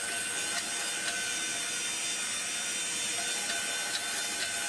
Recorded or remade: recorded